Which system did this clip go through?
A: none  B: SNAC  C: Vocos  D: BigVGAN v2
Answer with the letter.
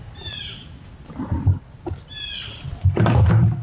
A